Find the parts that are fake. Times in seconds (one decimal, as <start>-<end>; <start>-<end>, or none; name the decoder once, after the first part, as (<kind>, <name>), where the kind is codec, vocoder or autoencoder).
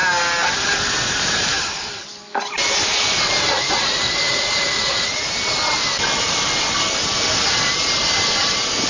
3.5-5.3 (vocoder, Vocos)